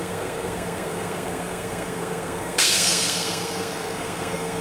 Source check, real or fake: fake